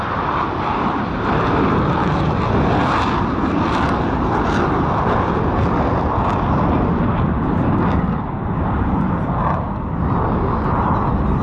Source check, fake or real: fake